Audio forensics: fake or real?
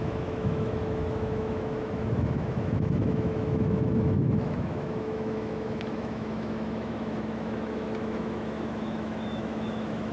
fake